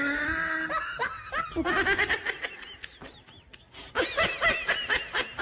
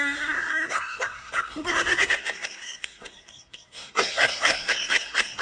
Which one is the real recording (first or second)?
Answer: first